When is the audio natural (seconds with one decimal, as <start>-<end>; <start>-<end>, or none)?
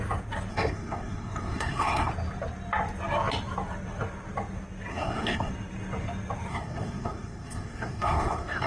0.0-0.5; 2.1-4.9; 5.5-6.5